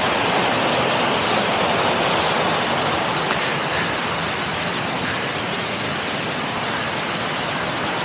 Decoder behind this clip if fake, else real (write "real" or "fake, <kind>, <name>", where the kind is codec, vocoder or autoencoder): real